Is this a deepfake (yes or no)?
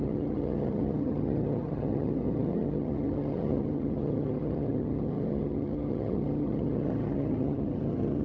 yes